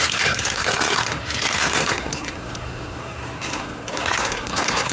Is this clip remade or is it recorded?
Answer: remade